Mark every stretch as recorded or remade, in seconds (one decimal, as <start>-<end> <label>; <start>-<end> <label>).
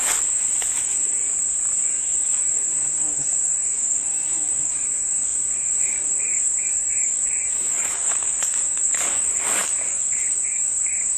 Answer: 0.0-1.2 remade; 1.2-2.0 recorded; 2.0-11.2 remade